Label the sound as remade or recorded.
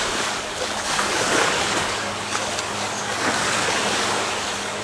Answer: remade